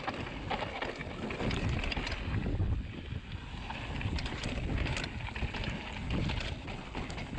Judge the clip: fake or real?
real